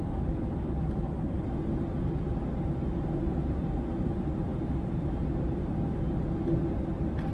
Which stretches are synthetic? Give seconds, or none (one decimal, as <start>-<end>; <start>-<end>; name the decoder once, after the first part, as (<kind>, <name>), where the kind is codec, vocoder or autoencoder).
none